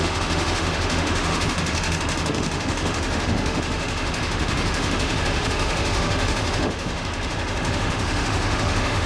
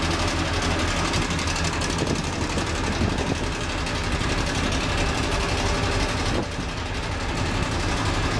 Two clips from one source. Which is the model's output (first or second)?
first